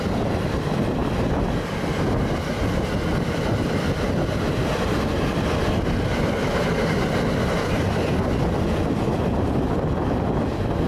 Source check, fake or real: real